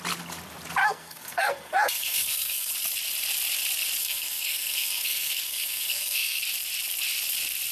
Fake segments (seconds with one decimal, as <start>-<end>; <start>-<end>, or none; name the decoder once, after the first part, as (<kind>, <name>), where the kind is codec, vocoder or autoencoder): 0.8-2.7 (codec, SNAC); 4.0-6.4

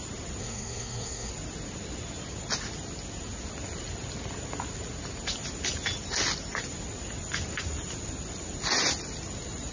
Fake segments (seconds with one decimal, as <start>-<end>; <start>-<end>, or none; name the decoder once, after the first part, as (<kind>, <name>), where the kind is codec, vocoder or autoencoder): 0.4-1.3 (codec, SNAC)

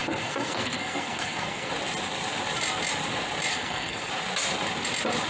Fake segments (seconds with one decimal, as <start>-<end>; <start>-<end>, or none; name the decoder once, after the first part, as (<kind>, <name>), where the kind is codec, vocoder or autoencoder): 0.0-1.7 (codec, SNAC); 3.5-4.1

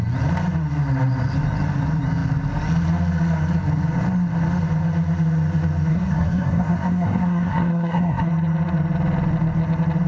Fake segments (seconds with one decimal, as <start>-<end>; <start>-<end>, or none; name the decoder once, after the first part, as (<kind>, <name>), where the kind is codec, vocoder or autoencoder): 5.9-8.3 (codec, SNAC)

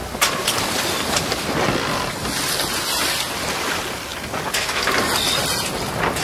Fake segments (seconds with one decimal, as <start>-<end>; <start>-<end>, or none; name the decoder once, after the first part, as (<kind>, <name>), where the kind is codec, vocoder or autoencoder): none

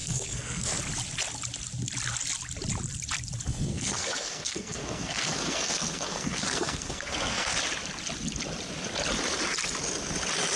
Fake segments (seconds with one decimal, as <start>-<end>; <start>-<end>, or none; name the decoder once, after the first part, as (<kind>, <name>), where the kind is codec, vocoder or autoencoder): 0.0-0.8 (codec, SNAC); 3.5-7.5